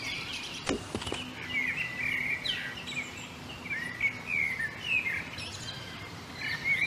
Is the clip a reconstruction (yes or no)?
no